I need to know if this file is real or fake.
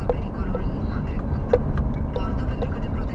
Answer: real